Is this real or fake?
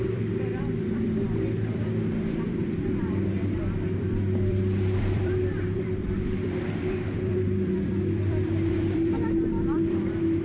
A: fake